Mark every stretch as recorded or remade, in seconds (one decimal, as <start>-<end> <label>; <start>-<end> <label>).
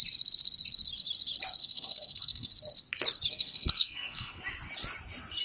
0.0-1.6 recorded; 1.6-2.5 remade; 2.5-3.3 recorded; 3.3-4.4 remade; 4.4-5.4 recorded